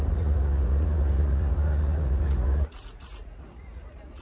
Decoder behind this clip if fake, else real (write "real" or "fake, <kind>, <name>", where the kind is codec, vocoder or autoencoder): fake, vocoder, Vocos